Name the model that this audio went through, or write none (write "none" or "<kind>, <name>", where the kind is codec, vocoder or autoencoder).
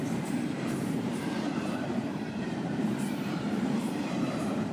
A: vocoder, BigVGAN v2